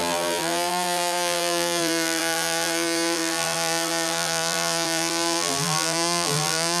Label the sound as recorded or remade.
remade